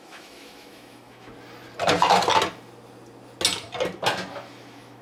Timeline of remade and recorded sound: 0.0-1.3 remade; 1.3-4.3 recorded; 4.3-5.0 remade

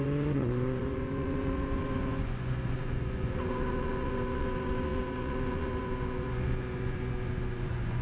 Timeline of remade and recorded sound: 0.0-8.0 remade

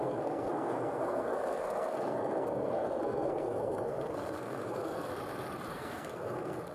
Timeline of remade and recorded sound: 0.0-5.1 remade; 5.1-5.7 recorded; 5.7-6.7 remade

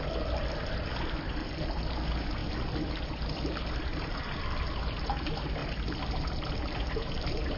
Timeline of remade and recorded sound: 0.0-7.6 recorded

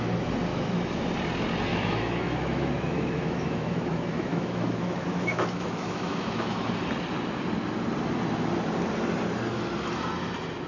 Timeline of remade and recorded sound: 0.0-0.5 recorded; 0.5-1.0 remade; 1.0-1.7 recorded; 1.7-6.7 remade; 6.7-10.7 recorded

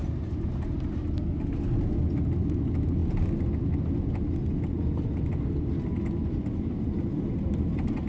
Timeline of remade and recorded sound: 0.0-8.1 recorded